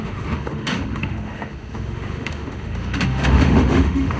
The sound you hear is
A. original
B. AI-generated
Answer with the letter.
B